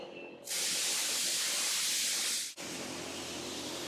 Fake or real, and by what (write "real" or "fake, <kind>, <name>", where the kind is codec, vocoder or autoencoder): real